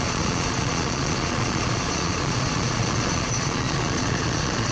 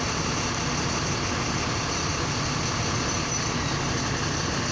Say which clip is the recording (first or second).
second